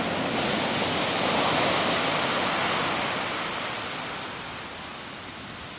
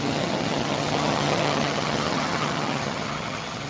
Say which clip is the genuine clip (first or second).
first